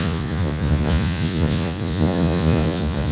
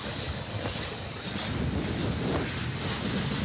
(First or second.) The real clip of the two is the second